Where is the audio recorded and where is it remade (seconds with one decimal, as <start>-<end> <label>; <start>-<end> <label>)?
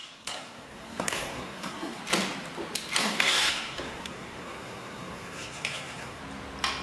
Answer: 0.0-2.0 remade; 2.0-3.0 recorded; 3.0-6.2 remade; 6.2-6.8 recorded